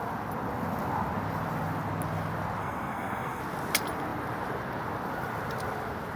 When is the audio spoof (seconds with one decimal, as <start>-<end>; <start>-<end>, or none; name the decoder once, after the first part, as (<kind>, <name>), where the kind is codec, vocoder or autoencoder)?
2.6-3.4 (codec, SNAC)